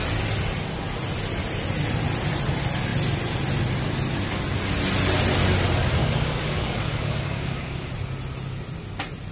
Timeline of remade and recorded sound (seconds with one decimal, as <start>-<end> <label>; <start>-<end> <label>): 0.0-6.0 recorded; 6.0-7.9 remade; 7.9-9.3 recorded

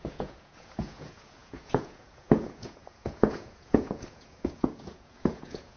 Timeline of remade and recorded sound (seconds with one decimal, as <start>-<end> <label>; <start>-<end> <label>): 0.0-5.8 remade

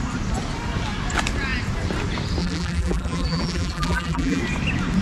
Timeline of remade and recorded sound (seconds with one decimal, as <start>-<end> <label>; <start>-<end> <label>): 0.0-2.4 recorded; 2.4-4.4 remade; 4.4-5.0 recorded

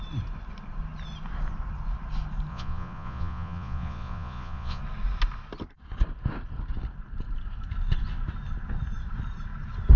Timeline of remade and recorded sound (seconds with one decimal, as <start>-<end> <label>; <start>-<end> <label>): 0.0-2.5 recorded; 2.5-4.8 remade; 4.8-10.0 recorded

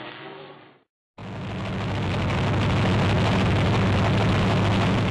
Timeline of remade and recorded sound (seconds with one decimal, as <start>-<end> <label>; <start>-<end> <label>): 0.0-5.1 recorded

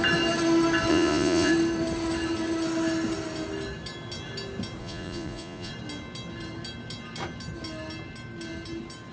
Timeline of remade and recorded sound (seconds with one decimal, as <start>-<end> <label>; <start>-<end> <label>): 0.0-0.9 recorded; 0.9-1.5 remade; 1.5-4.8 recorded; 4.8-5.7 remade; 5.7-9.1 recorded

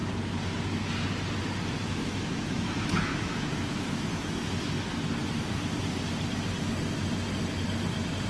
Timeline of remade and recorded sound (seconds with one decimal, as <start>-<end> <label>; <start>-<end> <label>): 0.0-1.8 recorded; 1.8-4.4 remade; 4.4-8.3 recorded

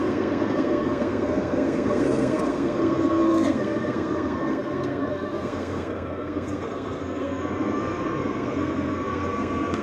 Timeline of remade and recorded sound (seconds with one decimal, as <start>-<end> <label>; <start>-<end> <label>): 0.0-9.8 remade